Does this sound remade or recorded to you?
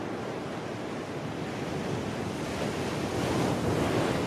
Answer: recorded